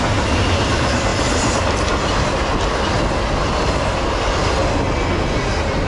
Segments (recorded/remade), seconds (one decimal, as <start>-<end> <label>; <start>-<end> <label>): 0.0-5.9 recorded